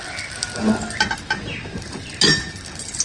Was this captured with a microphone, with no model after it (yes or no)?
yes